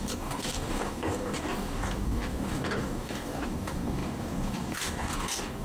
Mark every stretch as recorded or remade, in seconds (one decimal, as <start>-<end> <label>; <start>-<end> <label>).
0.0-5.6 remade